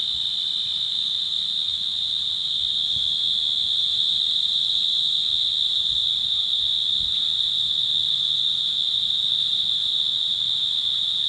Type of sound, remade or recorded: recorded